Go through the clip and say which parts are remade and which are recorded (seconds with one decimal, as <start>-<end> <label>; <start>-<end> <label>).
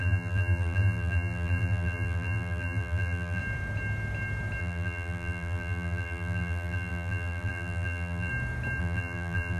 0.0-3.4 remade; 3.4-4.6 recorded; 4.6-8.3 remade; 8.3-8.8 recorded; 8.8-9.6 remade